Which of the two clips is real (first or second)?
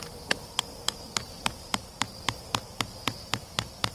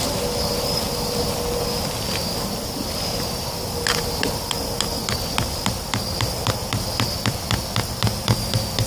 second